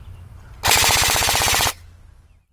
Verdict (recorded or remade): recorded